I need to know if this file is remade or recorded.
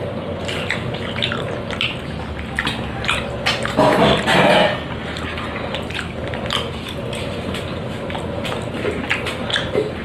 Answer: recorded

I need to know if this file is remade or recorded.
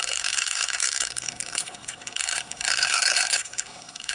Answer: remade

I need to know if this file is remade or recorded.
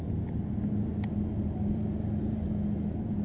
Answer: recorded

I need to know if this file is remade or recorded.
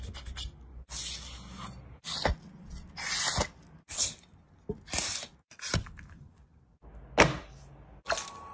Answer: recorded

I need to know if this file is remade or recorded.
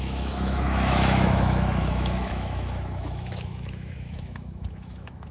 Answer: remade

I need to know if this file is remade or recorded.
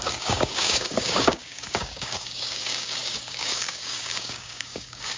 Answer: remade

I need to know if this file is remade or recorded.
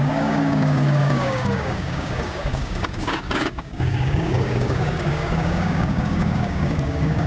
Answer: remade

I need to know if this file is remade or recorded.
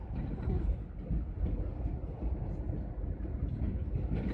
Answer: recorded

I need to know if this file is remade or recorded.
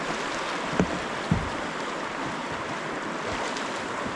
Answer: recorded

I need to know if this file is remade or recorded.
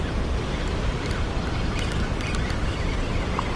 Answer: recorded